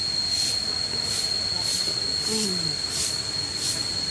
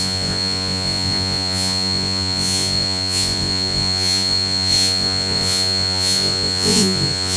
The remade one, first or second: second